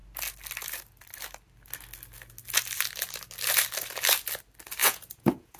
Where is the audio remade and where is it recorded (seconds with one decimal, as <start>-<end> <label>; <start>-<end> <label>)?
0.0-4.8 recorded; 4.8-5.6 remade